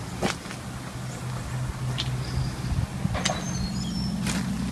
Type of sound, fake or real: real